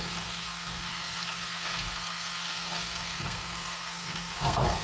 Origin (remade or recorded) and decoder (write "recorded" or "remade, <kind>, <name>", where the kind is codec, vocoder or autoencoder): remade, codec, SNAC